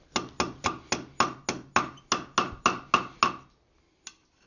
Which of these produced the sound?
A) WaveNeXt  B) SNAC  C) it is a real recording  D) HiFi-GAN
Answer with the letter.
C